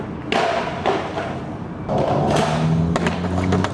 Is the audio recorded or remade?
recorded